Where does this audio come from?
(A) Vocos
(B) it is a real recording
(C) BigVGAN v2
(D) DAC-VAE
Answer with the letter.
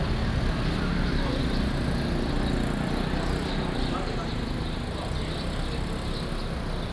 B